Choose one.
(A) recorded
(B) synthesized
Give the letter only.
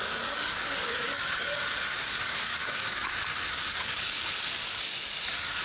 B